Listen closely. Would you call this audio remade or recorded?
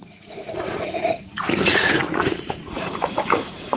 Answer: remade